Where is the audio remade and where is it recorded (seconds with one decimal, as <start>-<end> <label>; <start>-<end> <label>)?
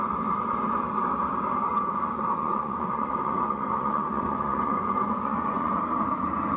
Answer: 0.0-1.7 recorded; 1.7-5.7 remade; 5.7-6.6 recorded